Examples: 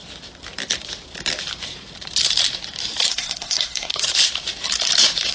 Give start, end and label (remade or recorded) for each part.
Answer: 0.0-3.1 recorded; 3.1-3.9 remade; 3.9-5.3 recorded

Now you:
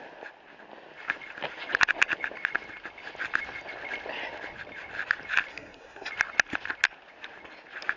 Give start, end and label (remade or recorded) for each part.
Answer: 0.0-5.5 recorded; 5.5-6.1 remade; 6.1-8.0 recorded